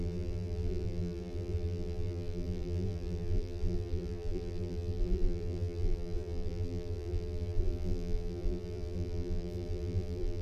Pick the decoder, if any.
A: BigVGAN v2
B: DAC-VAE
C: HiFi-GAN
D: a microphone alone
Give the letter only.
A